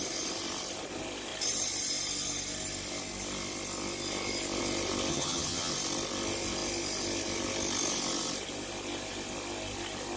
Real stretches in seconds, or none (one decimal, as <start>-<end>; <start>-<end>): 0.0-5.1; 5.7-10.2